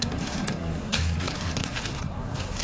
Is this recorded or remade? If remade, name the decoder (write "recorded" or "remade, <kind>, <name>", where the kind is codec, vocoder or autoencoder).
remade, codec, SNAC